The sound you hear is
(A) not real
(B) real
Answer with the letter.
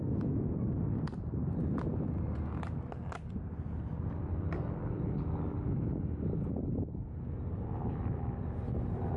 B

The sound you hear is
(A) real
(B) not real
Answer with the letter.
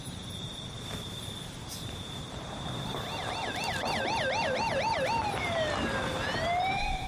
B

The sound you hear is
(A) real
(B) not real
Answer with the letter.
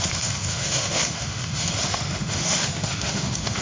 B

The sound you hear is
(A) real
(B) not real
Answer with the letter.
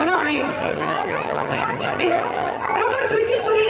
B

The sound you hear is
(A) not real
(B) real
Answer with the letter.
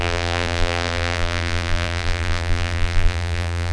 A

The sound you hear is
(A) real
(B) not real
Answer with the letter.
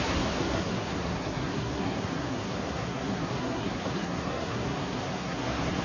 B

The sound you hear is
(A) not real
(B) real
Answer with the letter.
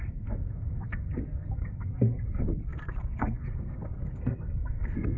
A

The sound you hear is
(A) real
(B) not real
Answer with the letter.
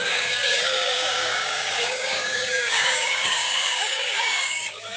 B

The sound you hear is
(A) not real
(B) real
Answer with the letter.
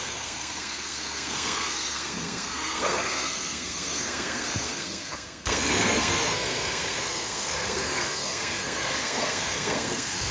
A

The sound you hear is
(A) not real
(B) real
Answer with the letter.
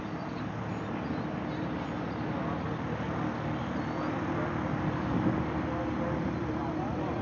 B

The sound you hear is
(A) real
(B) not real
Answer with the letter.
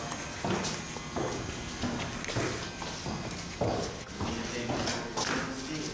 A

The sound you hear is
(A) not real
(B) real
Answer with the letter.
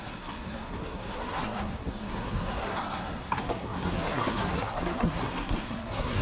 A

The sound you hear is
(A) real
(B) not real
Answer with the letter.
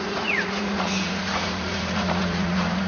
B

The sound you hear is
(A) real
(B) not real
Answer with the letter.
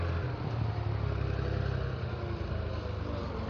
A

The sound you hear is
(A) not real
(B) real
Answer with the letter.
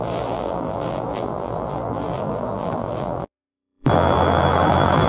A